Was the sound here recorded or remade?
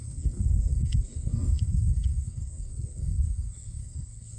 remade